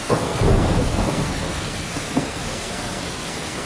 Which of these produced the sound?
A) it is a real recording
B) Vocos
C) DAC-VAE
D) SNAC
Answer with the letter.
D